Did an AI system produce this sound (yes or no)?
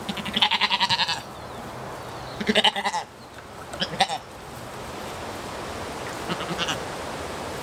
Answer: no